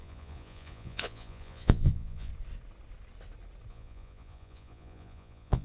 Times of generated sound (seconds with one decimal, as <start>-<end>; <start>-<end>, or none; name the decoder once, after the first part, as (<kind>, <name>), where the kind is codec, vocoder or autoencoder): 0.0-2.3 (vocoder, Vocos); 3.7-5.6